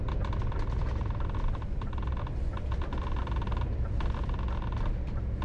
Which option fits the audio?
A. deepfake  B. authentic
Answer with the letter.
B